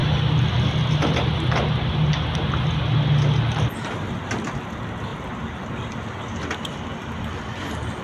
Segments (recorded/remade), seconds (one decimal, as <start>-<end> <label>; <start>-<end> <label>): 0.0-8.0 recorded